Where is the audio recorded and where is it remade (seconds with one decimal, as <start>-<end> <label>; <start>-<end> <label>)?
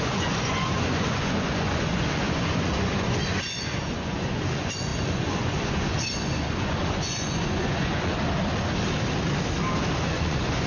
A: 0.0-8.1 remade; 8.1-10.0 recorded; 10.0-10.7 remade